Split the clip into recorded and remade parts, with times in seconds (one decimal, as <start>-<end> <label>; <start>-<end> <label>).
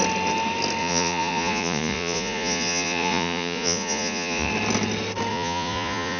0.0-0.8 recorded; 0.8-4.5 remade; 4.5-5.3 recorded; 5.3-6.2 remade